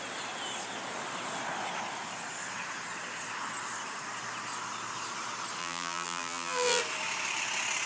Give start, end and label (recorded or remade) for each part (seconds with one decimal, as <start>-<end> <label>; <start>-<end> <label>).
0.0-5.6 recorded; 5.6-6.8 remade; 6.8-7.9 recorded